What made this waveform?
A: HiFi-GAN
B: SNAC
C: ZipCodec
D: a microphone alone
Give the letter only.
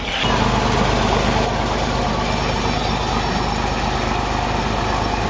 D